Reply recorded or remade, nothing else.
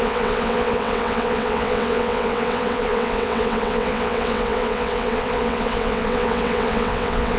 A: remade